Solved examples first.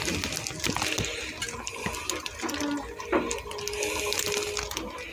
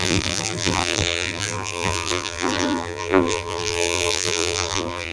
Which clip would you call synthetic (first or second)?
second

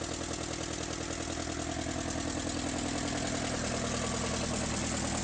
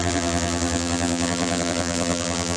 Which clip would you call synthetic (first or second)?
second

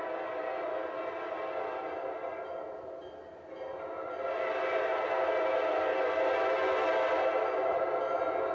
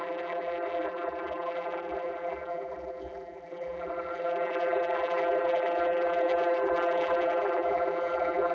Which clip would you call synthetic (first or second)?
second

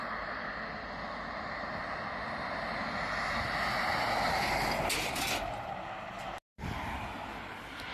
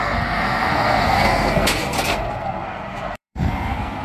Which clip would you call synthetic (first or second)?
second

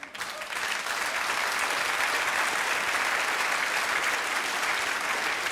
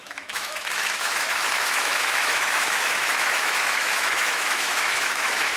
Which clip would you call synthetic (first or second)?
second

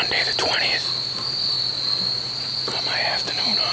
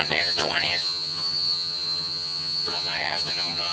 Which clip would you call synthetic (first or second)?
second